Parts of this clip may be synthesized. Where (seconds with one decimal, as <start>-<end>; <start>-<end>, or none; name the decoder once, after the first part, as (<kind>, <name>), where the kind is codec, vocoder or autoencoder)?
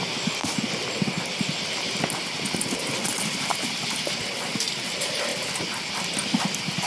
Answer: none